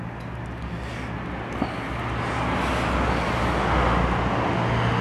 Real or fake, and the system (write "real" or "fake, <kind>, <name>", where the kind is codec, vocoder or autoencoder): real